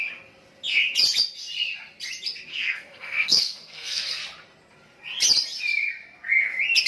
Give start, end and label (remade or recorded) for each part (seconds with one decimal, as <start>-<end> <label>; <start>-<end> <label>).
0.0-2.5 recorded; 2.5-4.2 remade; 4.2-6.9 recorded